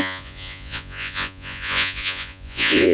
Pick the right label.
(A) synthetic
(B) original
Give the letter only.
A